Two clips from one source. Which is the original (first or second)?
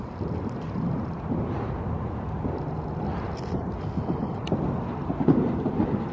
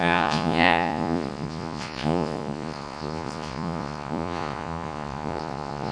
first